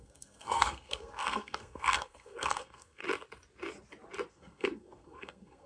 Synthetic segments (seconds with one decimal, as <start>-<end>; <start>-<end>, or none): 0.0-3.0; 4.3-5.7